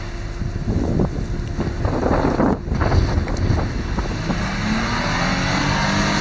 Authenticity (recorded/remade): recorded